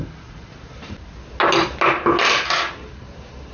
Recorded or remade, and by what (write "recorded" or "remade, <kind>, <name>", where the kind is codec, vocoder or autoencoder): recorded